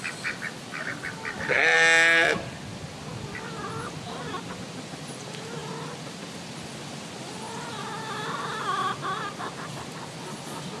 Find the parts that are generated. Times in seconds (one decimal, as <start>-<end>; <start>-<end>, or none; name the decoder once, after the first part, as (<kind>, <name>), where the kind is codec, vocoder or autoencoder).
none